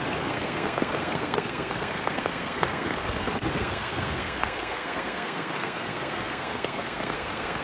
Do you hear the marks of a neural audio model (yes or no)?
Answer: yes